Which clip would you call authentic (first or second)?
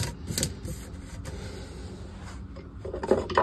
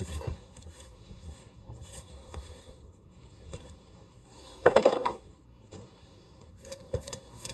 first